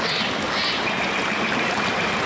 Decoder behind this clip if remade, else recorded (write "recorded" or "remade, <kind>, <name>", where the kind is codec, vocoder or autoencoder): recorded